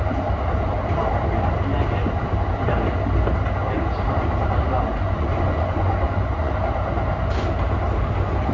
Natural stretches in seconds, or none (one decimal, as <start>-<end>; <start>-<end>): 0.0-4.9; 6.5-8.5